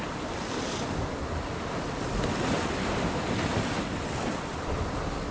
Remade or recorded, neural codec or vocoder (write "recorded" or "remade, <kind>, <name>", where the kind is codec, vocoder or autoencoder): recorded